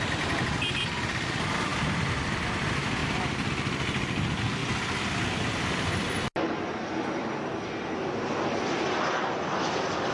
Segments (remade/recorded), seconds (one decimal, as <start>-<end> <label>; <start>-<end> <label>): 0.0-10.1 recorded